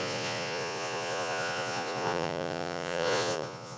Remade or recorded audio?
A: remade